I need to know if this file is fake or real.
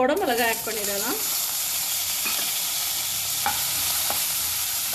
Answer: fake